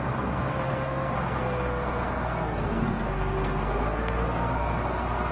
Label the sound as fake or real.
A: fake